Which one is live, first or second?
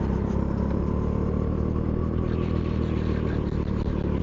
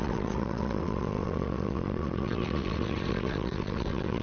first